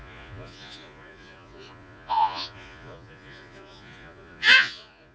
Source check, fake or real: fake